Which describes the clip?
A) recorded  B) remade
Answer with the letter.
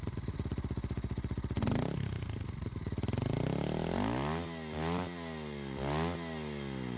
A